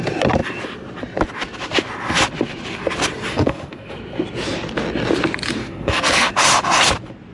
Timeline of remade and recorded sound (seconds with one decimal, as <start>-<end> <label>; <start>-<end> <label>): 0.0-3.3 recorded; 3.3-3.9 remade; 3.9-5.6 recorded; 5.6-6.3 remade; 6.3-7.3 recorded